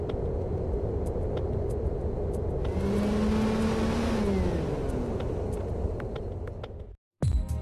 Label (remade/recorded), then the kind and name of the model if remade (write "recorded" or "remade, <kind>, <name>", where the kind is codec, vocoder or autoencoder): recorded